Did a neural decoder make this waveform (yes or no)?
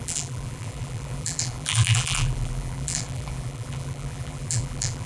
yes